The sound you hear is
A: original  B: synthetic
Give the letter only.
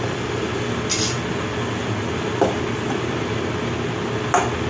A